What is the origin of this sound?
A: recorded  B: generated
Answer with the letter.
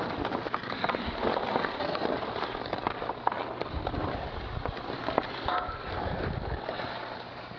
A